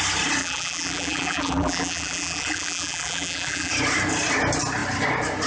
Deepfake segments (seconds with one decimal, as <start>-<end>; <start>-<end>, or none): 0.4-3.7